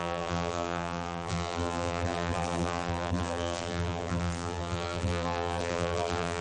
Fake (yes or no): yes